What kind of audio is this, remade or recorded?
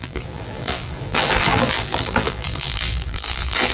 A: remade